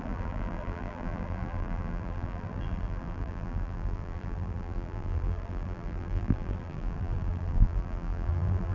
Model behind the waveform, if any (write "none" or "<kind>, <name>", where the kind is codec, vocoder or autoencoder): vocoder, BigVGAN v2